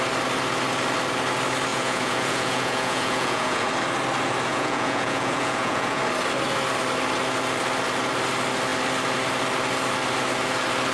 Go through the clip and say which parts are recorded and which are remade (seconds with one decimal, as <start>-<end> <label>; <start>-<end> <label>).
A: 0.0-1.7 recorded; 1.7-3.7 remade; 3.7-4.5 recorded; 4.5-6.0 remade; 6.0-10.9 recorded